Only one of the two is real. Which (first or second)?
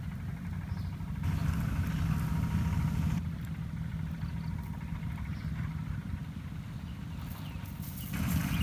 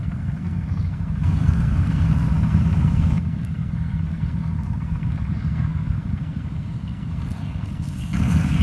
first